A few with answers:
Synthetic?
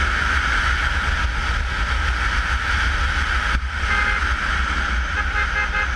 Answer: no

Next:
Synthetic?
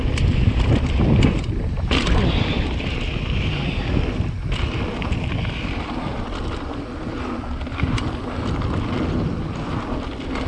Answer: no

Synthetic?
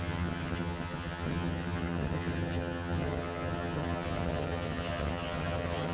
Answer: yes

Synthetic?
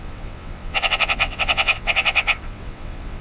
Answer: yes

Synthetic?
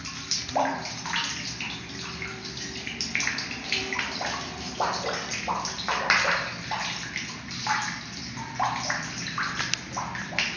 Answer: no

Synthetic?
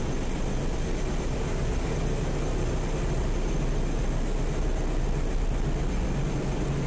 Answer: no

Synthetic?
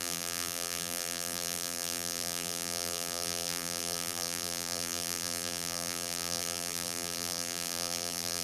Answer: yes